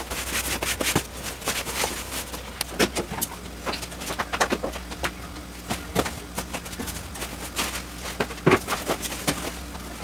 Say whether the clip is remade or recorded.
recorded